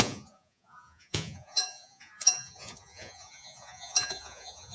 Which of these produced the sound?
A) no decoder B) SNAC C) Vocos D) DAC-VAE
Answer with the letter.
C